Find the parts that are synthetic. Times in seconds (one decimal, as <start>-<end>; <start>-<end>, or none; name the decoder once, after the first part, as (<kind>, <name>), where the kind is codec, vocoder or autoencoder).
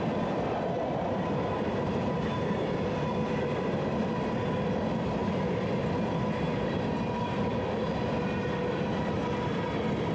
none